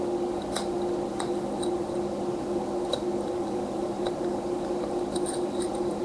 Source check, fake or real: real